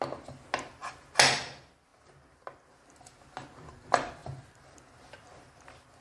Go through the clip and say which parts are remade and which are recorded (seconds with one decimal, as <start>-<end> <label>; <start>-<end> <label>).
0.0-6.0 recorded